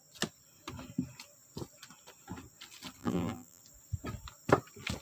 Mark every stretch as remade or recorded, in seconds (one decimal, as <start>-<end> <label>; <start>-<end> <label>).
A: 0.0-3.0 recorded; 3.0-3.6 remade; 3.6-5.0 recorded